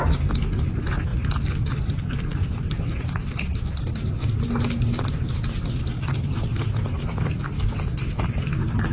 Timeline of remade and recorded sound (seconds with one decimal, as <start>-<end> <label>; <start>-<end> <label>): 0.0-8.9 recorded